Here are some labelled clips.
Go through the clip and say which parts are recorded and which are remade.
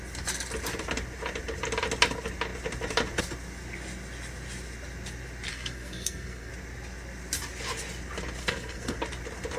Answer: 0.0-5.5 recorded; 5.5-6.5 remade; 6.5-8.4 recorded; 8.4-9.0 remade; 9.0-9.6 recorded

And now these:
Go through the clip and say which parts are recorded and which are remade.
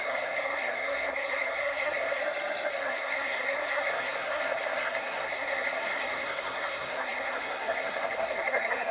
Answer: 0.0-2.2 remade; 2.2-2.7 recorded; 2.7-8.9 remade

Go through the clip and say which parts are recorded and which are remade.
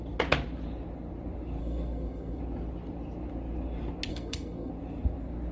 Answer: 0.0-1.6 recorded; 1.6-2.4 remade; 2.4-4.1 recorded; 4.1-4.7 remade; 4.7-5.5 recorded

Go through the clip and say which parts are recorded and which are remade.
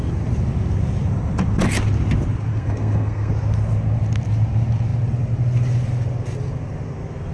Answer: 0.0-2.5 recorded; 2.5-3.3 remade; 3.3-7.3 recorded